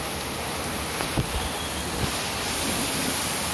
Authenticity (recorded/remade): recorded